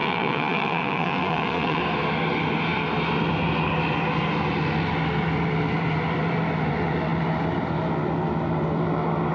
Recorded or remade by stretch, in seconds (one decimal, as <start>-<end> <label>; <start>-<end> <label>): 0.0-1.8 remade; 1.8-9.3 recorded